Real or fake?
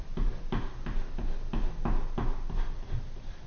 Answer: real